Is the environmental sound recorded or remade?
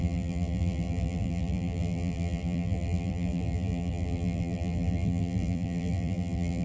remade